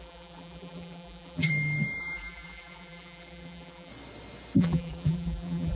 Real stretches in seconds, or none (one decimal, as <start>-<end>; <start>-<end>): 1.5-2.0; 3.9-4.6